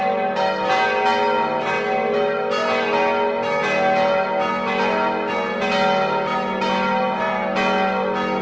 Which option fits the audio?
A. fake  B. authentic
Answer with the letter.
B